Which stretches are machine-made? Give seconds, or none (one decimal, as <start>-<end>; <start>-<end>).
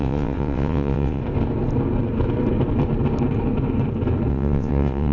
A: 0.0-1.2; 4.3-5.1